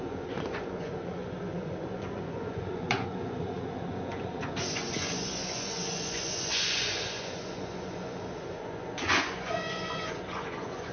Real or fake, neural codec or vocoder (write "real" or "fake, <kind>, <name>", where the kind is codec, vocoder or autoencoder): fake, vocoder, Vocos